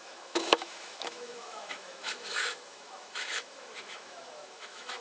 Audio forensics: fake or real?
fake